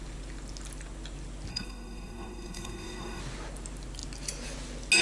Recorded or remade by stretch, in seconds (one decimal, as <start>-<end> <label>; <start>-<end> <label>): 0.0-1.5 recorded; 1.5-3.2 remade; 3.2-5.0 recorded